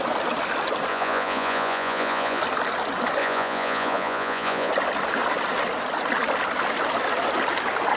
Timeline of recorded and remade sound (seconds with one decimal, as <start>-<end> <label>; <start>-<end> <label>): 0.0-0.9 recorded; 0.9-2.4 remade; 2.4-3.2 recorded; 3.2-4.7 remade; 4.7-8.0 recorded